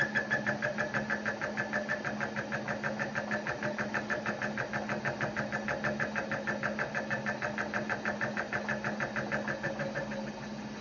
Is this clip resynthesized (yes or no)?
no